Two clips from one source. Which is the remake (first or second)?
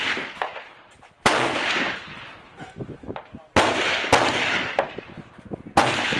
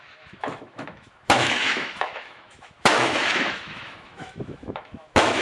second